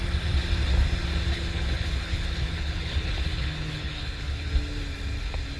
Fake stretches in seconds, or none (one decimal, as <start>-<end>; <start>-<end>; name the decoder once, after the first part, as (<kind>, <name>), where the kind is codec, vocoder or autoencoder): 1.3-4.5 (codec, HILCodec)